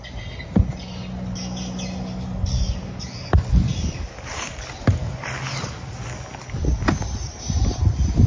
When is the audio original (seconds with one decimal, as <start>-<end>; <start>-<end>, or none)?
0.0-8.3